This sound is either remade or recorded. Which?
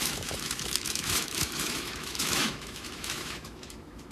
remade